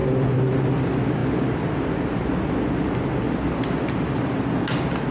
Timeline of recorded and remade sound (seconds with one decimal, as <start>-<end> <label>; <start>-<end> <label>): 0.0-0.6 remade; 0.6-5.1 recorded